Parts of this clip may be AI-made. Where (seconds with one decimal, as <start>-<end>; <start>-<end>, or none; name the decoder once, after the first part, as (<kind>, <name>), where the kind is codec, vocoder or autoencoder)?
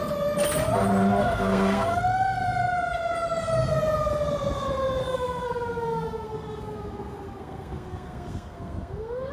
1.2-2.0 (codec, SNAC); 5.0-9.3